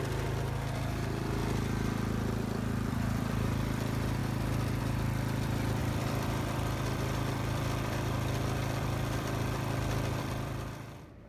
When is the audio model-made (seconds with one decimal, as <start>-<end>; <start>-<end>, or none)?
0.0-1.4; 2.9-4.2; 4.8-11.3